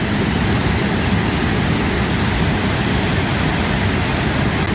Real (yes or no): yes